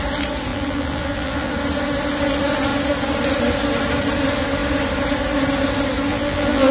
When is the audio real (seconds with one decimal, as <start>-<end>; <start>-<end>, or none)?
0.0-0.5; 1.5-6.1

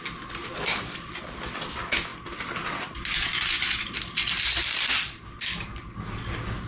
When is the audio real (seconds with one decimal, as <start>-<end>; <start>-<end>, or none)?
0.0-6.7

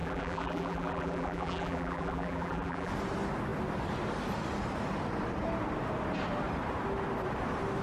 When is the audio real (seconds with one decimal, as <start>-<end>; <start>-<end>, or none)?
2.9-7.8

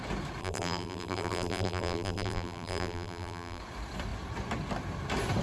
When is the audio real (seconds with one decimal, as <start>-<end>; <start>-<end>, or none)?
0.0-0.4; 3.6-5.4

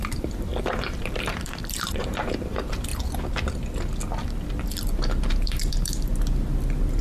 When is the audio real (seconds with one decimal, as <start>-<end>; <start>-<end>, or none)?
0.5-1.0; 2.9-5.3; 6.1-7.0

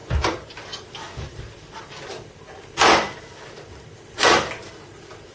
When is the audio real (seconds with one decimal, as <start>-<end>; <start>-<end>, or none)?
none

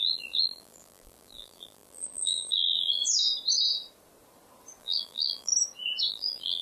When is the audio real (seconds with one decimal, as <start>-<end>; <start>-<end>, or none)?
3.0-4.8; 5.5-6.1